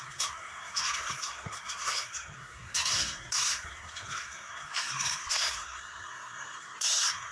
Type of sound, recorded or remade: remade